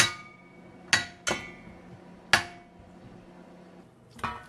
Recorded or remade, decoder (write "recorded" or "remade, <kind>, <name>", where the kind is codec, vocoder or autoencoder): recorded